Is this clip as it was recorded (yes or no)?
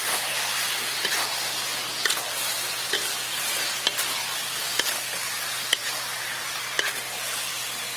yes